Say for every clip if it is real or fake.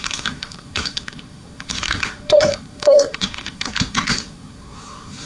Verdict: fake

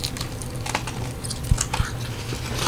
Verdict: real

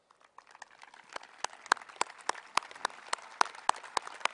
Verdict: real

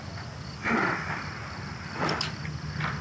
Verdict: real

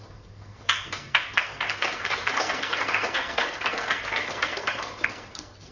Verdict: fake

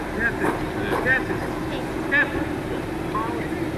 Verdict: real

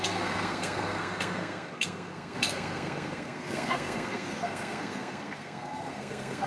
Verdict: fake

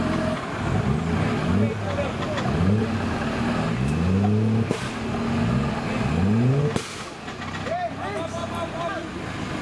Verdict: real